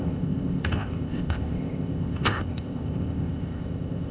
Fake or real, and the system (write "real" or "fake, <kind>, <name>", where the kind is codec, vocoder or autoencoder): fake, codec, ZipCodec